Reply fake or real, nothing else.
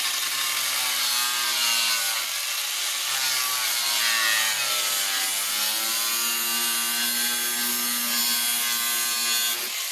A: real